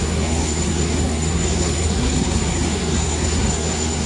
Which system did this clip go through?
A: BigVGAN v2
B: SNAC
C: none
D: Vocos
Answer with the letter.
B